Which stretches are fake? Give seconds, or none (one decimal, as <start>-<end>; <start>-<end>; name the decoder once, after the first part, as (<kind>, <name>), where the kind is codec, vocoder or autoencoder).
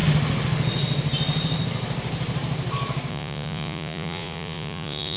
3.1-5.2 (vocoder, Vocos)